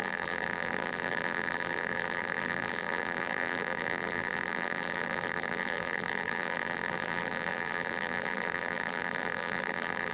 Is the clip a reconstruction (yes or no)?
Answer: yes